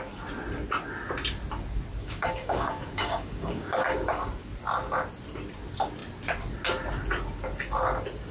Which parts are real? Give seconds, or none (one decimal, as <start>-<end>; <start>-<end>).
0.0-2.0; 4.3-8.3